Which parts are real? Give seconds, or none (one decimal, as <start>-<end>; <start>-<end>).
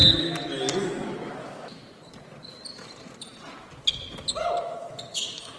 0.0-0.8; 1.8-4.6